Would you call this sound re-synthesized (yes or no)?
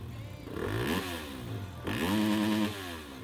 no